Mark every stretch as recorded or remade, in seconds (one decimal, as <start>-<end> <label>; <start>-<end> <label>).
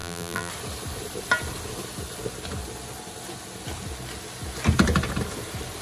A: 0.0-0.5 remade; 0.5-5.8 recorded